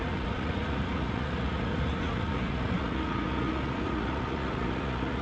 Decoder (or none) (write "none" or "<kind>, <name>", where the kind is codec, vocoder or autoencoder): vocoder, Vocos